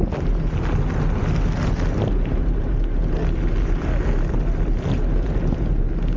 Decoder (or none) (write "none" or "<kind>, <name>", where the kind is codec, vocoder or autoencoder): none